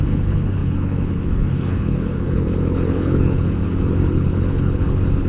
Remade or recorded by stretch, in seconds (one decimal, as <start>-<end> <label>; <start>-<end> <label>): 0.0-5.3 remade